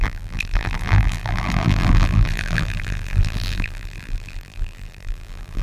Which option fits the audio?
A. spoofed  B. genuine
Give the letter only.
A